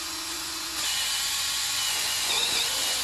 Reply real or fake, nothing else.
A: fake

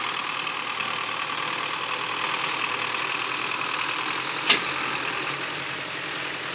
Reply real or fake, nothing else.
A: real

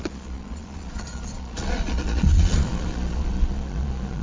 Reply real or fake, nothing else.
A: fake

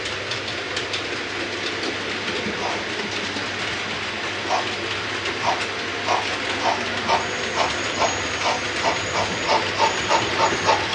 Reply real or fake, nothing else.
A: real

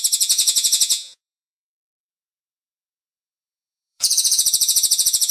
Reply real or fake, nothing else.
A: fake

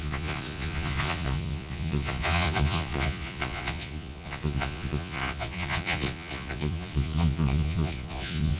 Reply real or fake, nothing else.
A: fake